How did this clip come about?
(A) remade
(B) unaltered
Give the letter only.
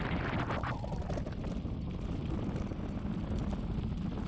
B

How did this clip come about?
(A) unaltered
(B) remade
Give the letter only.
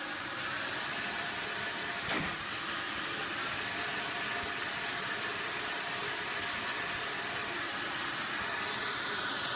A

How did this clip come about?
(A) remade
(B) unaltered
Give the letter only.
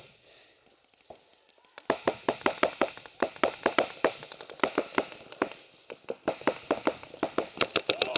B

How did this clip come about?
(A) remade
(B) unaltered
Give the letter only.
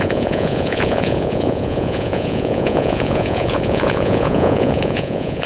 A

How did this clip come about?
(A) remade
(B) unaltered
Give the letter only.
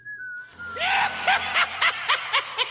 B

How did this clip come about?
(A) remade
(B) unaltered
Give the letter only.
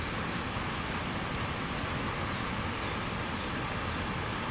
B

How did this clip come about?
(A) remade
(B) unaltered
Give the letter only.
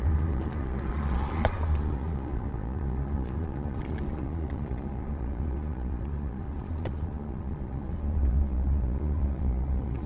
A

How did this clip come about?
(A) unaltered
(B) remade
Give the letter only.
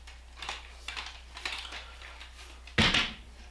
A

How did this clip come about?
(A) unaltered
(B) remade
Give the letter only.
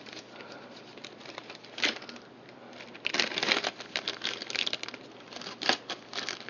A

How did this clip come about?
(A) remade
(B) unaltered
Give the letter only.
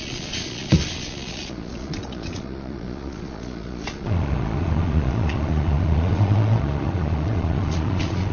A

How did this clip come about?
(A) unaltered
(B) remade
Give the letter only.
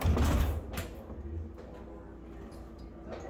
A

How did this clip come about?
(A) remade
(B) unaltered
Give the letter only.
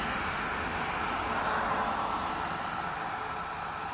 B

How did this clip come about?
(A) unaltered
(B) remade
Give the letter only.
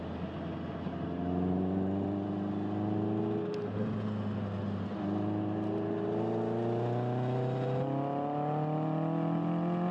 A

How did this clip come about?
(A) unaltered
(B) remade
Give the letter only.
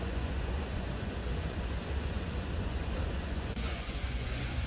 B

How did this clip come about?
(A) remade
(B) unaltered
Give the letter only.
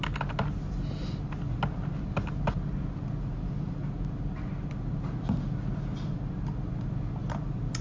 B